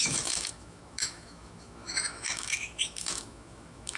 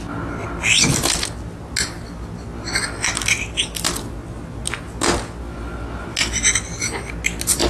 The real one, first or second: second